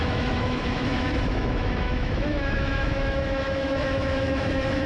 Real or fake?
fake